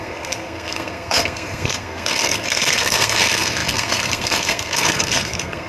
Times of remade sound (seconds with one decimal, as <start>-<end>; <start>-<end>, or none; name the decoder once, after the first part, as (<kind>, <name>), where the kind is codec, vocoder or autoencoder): 0.0-5.7 (codec, SNAC)